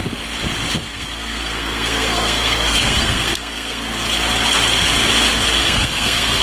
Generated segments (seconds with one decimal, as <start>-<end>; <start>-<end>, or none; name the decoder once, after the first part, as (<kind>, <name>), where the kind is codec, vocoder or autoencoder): 0.8-3.9 (codec, SNAC); 5.6-6.4